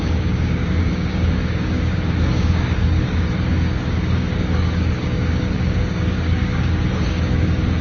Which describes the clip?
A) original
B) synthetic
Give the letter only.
B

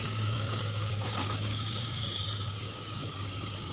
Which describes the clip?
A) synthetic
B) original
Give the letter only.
A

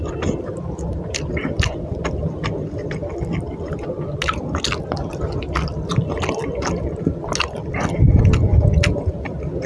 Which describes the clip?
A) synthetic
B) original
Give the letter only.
B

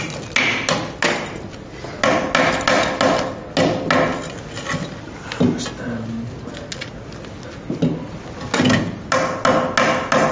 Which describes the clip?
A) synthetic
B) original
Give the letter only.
B